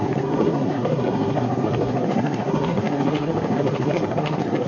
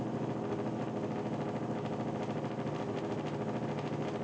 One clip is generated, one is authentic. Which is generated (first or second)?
first